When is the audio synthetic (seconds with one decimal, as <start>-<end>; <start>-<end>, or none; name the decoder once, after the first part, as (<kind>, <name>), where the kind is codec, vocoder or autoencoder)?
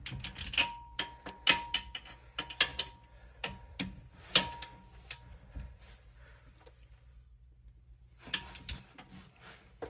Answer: none